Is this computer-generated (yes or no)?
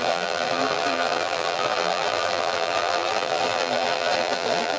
yes